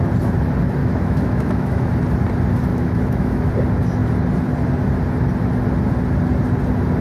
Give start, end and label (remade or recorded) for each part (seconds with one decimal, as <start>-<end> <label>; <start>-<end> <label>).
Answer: 0.0-0.8 recorded; 0.8-1.9 remade; 1.9-2.7 recorded; 2.7-3.5 remade; 3.5-7.0 recorded